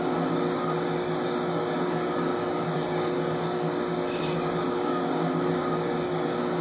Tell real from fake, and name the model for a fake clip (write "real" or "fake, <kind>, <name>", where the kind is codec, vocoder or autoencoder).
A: fake, codec, DAC